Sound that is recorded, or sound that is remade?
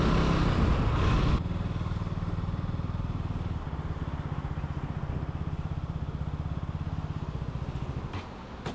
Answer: recorded